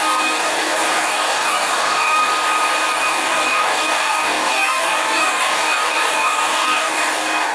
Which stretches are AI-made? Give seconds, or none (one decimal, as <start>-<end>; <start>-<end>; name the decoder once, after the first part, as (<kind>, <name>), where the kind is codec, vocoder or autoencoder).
0.0-2.3 (codec, DAC); 2.9-7.5

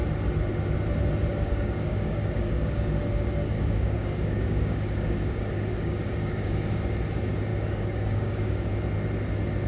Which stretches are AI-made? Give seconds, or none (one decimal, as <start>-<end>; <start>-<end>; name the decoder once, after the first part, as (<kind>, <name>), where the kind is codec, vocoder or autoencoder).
1.3-3.0 (codec, DAC); 3.4-6.8; 7.5-8.7

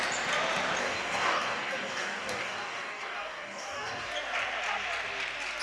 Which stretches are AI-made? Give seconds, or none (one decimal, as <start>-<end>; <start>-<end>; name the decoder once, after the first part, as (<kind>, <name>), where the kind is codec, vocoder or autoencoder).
0.8-4.1 (codec, DAC)

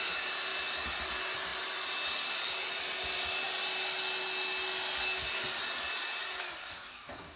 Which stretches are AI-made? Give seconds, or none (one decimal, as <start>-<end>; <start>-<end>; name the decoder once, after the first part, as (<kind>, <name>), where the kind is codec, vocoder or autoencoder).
6.6-7.4 (codec, DAC)

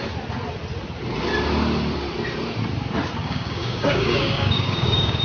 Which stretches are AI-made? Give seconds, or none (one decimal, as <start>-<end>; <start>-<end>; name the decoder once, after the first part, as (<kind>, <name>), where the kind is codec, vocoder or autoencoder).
3.2-5.2 (codec, DAC)